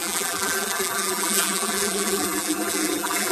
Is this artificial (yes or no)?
yes